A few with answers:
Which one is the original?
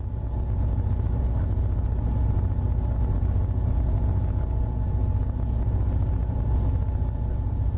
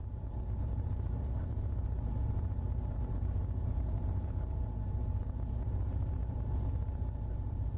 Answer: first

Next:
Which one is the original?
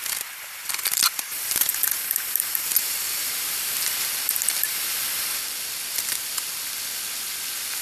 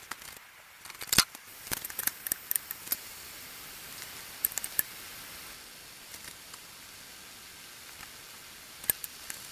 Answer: second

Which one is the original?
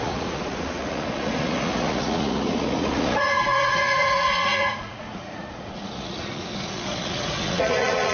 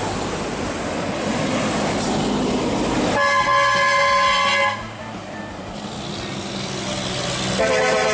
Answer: second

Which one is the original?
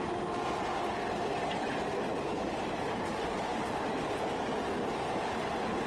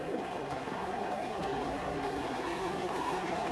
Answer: first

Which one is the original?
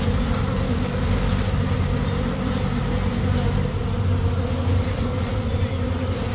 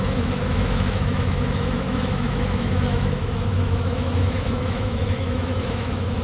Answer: first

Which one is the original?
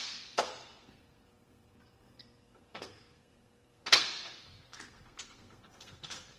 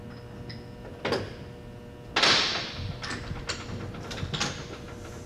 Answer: second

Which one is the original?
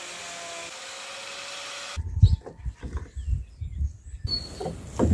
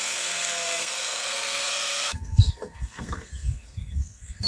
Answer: first